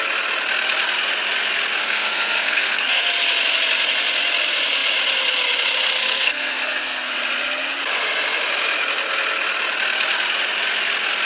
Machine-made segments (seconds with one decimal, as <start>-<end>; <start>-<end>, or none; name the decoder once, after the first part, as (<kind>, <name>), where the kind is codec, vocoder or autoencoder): 1.8-3.1 (codec, SNAC); 6.0-7.1